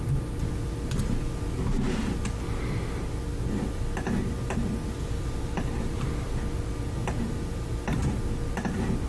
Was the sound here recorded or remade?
recorded